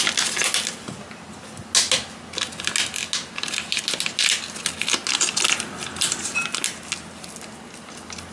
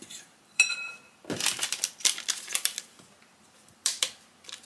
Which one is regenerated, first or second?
second